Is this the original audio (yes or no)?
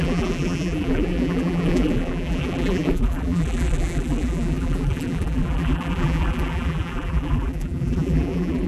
no